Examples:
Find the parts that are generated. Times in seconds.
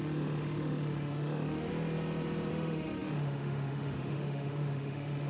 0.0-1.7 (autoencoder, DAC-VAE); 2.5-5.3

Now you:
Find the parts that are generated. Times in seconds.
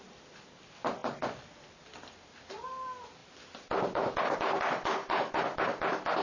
none